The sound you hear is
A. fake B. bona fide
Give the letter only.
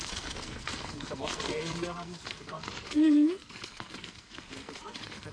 A